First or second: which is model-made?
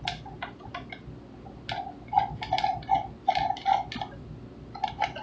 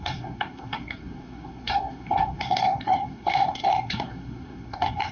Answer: second